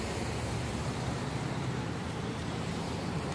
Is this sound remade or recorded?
remade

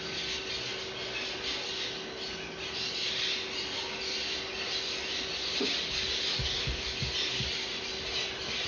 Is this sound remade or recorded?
recorded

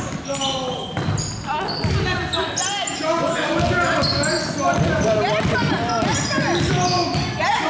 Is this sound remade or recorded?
recorded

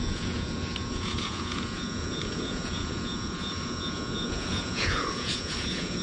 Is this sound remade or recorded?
remade